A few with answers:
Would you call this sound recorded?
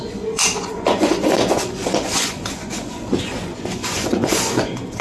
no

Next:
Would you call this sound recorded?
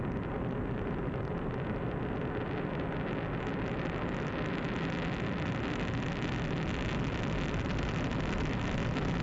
yes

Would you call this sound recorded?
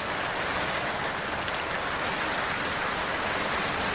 yes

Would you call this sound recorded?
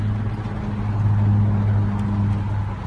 yes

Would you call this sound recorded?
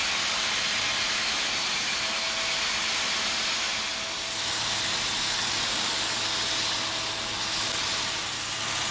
yes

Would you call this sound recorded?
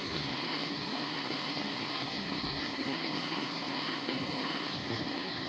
no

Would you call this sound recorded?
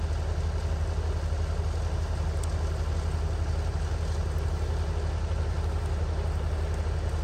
yes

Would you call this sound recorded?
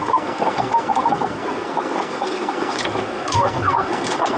no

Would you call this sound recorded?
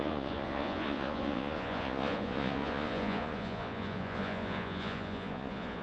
no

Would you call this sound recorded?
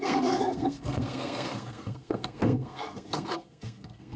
no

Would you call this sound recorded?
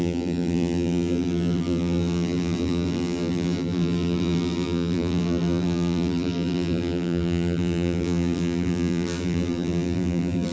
no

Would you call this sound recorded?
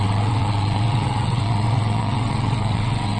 no